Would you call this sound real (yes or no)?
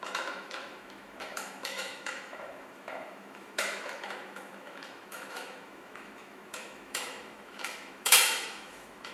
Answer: no